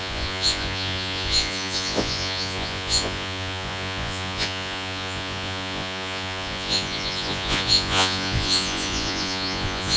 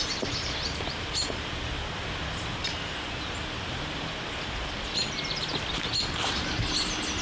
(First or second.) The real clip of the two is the second